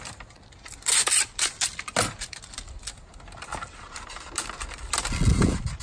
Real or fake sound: real